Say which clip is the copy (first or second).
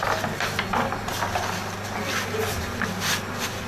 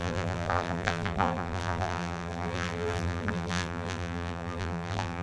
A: second